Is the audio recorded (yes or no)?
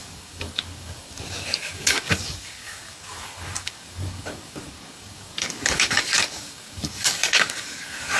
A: no